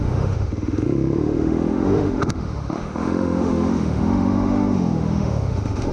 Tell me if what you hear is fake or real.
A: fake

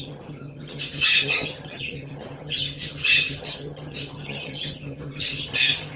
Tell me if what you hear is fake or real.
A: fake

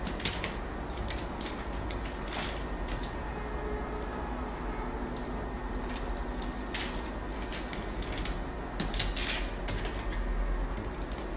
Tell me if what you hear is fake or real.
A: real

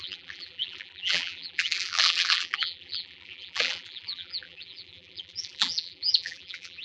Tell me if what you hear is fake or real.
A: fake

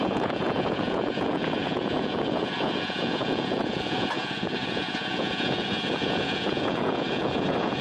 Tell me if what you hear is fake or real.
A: fake